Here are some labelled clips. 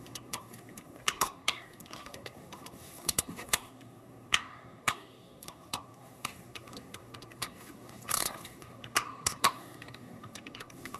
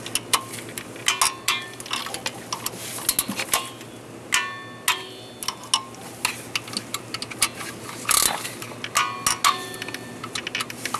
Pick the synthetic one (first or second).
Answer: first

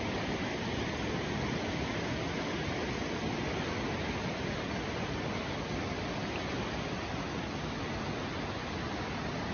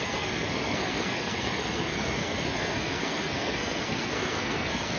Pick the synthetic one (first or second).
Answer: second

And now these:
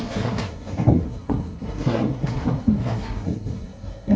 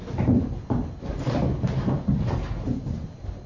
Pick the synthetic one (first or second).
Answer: first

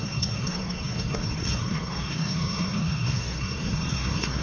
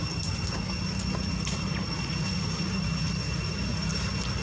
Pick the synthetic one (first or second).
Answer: first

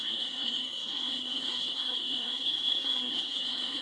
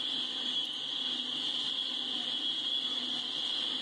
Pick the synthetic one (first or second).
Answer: first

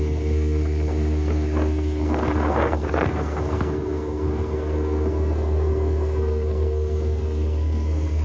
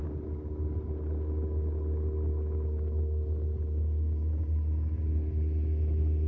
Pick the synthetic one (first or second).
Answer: first